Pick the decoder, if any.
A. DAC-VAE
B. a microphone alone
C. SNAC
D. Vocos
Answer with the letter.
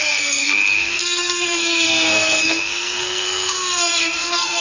C